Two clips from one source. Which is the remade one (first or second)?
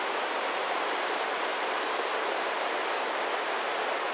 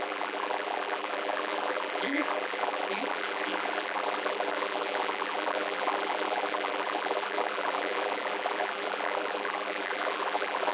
second